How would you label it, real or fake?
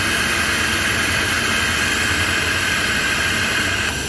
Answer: real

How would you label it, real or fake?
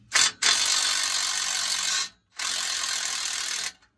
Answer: real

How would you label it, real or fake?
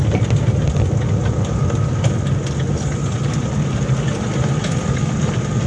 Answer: real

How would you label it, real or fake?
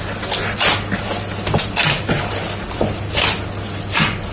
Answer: real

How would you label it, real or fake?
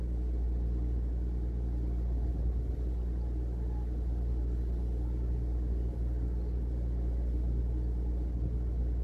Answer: real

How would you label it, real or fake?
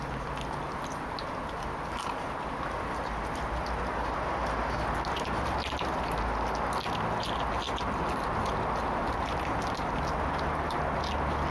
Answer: real